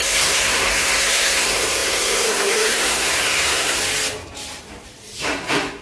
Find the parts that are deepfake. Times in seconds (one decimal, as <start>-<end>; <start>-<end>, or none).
0.0-3.8; 5.2-5.8